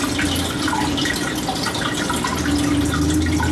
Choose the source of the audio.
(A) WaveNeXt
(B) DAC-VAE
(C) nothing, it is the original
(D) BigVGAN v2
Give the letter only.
C